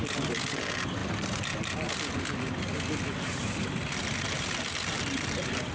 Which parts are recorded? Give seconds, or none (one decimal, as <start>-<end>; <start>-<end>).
0.0-5.7